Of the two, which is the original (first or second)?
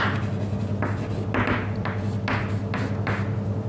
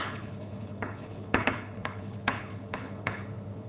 first